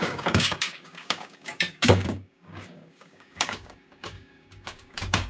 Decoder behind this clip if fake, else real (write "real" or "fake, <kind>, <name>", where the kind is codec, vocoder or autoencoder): fake, codec, DAC